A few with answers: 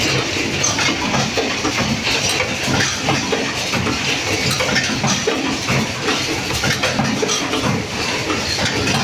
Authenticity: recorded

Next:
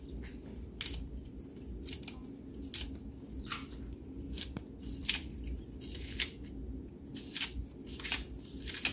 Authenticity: recorded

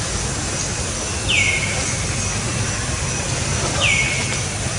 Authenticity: recorded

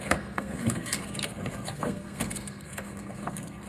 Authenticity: remade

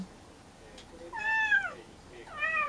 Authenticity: recorded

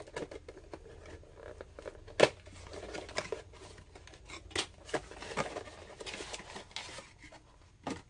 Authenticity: recorded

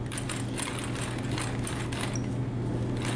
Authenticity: recorded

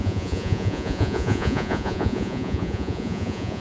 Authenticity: remade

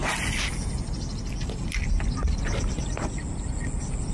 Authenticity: recorded